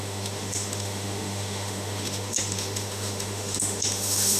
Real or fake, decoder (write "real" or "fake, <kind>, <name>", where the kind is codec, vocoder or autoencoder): fake, autoencoder, DAC-VAE